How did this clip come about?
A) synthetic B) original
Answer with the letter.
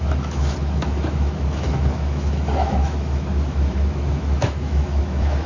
A